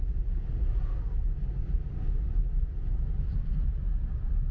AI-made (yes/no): no